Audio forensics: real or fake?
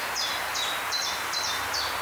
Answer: real